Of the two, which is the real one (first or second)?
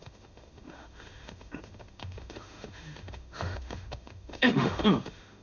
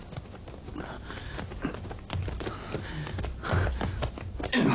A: second